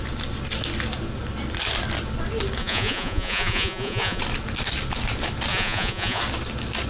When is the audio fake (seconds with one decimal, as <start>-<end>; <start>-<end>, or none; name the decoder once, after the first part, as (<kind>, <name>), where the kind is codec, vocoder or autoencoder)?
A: 2.6-4.2 (vocoder, Vocos); 5.5-6.2